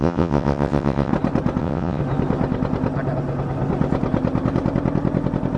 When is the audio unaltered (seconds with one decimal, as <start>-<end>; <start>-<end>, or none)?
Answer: 1.1-1.6; 2.0-5.6